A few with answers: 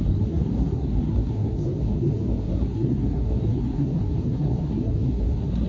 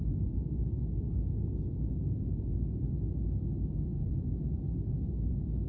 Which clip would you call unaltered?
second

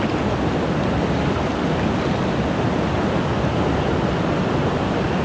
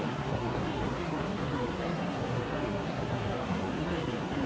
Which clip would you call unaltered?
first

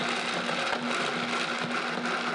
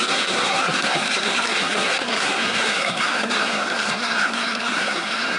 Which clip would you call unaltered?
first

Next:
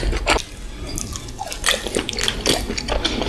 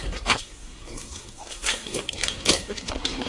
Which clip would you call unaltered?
first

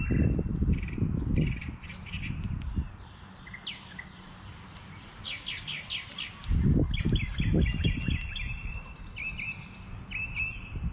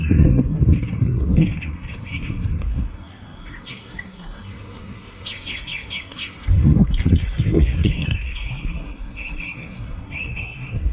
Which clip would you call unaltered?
first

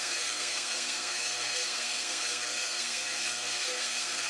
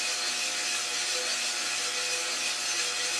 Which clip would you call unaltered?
second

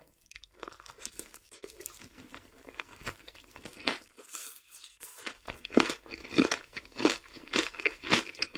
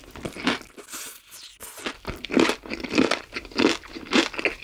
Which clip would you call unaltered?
second